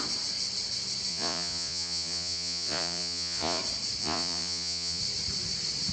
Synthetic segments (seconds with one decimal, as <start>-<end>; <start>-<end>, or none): 1.1-3.6; 4.0-5.0

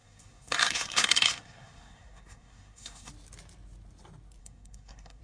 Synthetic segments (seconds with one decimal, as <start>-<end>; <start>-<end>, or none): 0.0-3.1; 4.4-5.2